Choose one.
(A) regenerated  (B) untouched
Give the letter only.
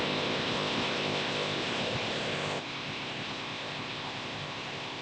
A